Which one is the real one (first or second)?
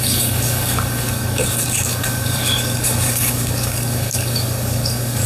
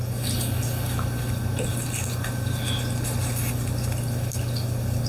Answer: second